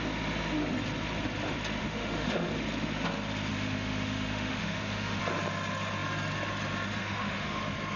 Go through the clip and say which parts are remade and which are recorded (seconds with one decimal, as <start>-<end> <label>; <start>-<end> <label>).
0.0-1.8 recorded; 1.8-2.5 remade; 2.5-3.5 recorded; 3.5-5.2 remade; 5.2-7.0 recorded; 7.0-7.6 remade; 7.6-8.0 recorded